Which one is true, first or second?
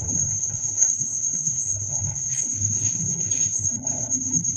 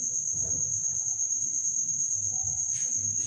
second